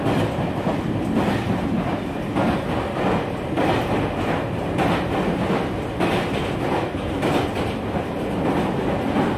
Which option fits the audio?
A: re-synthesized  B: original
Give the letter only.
B